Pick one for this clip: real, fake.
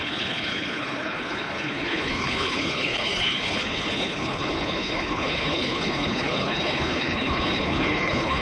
fake